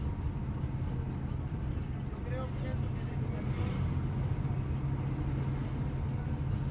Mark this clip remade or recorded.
recorded